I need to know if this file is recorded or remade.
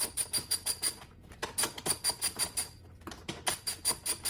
recorded